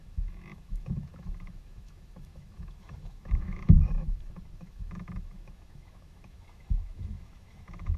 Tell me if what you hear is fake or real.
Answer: fake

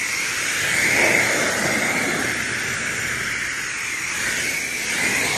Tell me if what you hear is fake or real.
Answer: real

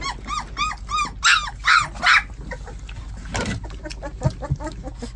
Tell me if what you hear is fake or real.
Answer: real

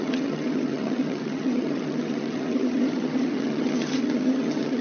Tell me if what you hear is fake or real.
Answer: fake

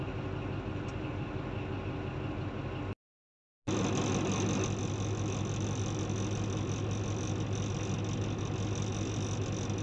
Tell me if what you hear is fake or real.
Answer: real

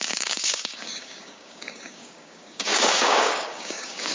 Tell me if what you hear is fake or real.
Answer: fake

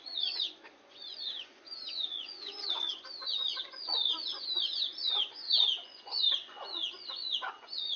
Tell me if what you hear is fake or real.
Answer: fake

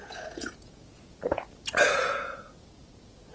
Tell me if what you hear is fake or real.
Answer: fake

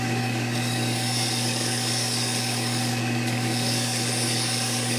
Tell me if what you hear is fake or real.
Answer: fake